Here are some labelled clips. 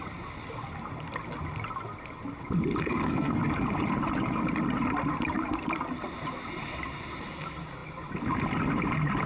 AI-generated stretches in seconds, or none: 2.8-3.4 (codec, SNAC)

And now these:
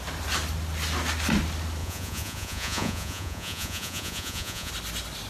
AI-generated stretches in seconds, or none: 1.8-4.7 (vocoder, Vocos)

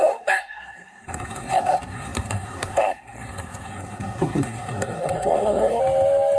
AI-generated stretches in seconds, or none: 0.0-5.8 (codec, SNAC)

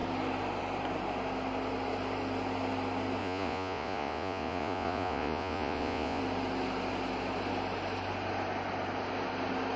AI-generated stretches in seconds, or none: 3.2-6.2 (vocoder, Vocos)

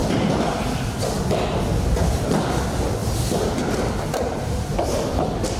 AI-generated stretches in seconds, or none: 0.0-0.5 (vocoder, BigVGAN v2); 3.0-5.1

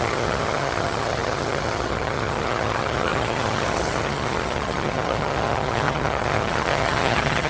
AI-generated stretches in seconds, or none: 0.0-7.5 (vocoder, HiFi-GAN)

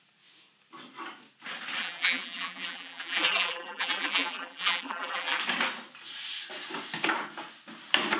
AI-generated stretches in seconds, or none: 1.8-5.4 (vocoder, BigVGAN v2)